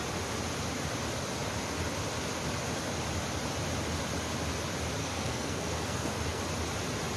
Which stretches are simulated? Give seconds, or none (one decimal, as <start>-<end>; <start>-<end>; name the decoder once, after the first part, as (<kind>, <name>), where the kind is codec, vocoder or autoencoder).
5.0-6.4 (codec, SNAC)